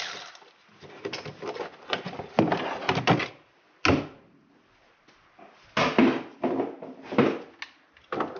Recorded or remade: recorded